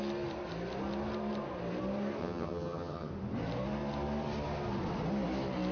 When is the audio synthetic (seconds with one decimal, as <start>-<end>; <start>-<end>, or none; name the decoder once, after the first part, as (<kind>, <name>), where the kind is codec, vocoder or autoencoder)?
2.2-3.1 (vocoder, HiFi-GAN)